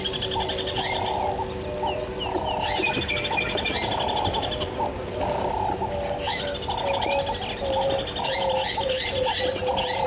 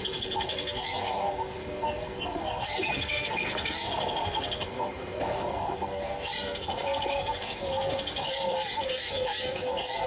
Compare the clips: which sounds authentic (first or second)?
first